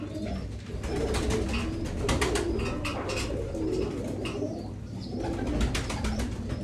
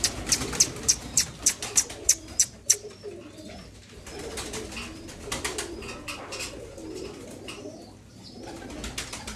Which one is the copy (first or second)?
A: second